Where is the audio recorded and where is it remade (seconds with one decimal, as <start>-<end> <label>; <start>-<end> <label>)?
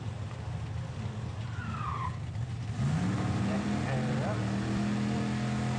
0.0-5.8 recorded